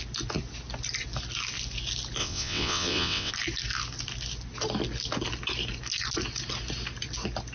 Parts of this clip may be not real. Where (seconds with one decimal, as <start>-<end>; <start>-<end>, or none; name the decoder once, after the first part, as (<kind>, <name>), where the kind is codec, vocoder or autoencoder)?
2.2-3.3 (vocoder, WaveNeXt)

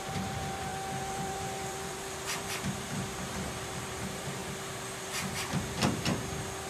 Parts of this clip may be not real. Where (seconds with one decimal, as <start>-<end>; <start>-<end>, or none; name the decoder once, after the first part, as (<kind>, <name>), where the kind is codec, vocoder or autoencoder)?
0.0-4.4 (vocoder, BigVGAN v2); 5.0-6.1

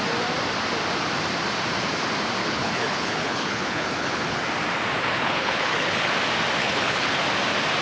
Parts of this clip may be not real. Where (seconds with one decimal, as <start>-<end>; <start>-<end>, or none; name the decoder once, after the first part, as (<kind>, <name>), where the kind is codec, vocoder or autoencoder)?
2.4-4.4 (codec, HILCodec); 5.0-6.1; 6.6-7.2